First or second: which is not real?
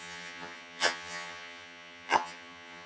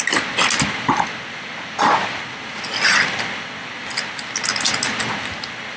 first